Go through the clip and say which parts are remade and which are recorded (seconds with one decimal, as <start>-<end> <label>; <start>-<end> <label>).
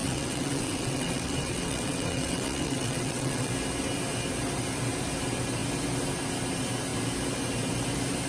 0.0-3.5 remade; 3.5-8.3 recorded